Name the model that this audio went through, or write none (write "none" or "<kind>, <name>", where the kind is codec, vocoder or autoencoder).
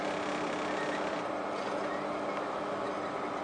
none